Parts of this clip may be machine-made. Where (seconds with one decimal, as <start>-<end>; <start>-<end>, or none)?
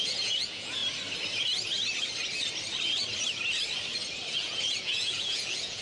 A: 0.0-0.8; 4.3-5.8